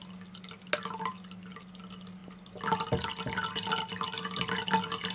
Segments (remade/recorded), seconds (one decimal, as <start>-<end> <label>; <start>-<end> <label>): 0.0-5.1 recorded